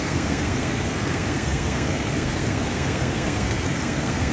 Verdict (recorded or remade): remade